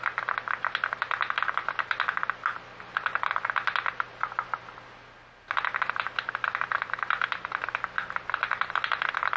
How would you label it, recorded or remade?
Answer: recorded